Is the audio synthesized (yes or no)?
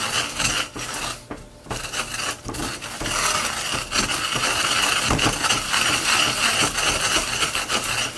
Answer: no